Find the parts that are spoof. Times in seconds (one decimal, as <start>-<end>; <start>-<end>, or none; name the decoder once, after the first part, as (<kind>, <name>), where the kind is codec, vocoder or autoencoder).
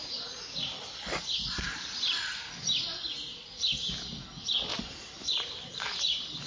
4.7-6.5 (vocoder, BigVGAN v2)